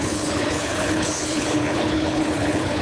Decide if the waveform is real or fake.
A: fake